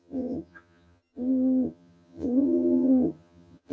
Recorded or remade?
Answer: remade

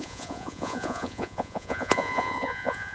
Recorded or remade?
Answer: remade